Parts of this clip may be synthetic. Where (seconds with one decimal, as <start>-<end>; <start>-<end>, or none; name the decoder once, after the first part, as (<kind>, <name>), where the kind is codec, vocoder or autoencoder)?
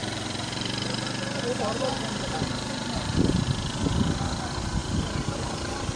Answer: 0.0-3.4 (vocoder, BigVGAN v2); 4.8-6.0